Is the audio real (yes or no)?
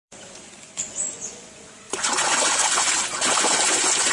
no